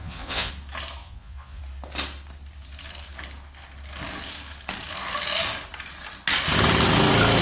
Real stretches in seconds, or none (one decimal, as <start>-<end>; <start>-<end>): 0.5-1.0; 1.6-7.4

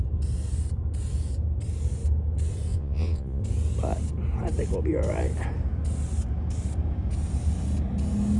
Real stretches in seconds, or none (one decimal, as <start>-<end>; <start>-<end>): 0.0-2.7; 3.4-8.4